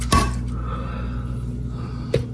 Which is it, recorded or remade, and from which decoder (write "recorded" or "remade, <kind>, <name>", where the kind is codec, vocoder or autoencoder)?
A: recorded